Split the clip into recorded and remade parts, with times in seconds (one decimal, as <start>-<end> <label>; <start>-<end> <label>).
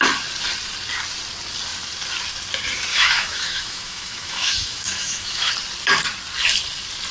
0.0-2.9 recorded; 2.9-5.5 remade; 5.5-7.1 recorded